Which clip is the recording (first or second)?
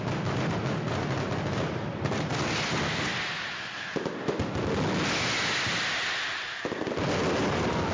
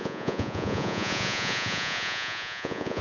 first